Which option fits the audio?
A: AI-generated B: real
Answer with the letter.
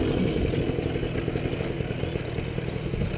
B